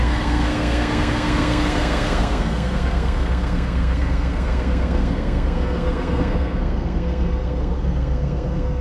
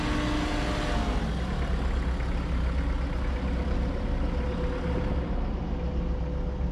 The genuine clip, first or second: second